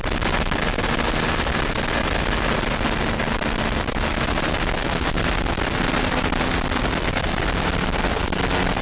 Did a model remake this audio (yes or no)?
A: no